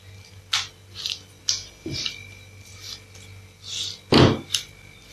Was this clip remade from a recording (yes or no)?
no